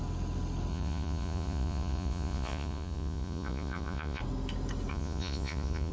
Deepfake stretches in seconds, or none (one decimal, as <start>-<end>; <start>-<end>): 0.7-4.2; 4.9-5.9